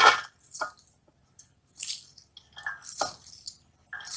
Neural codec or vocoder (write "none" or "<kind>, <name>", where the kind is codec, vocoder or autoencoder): none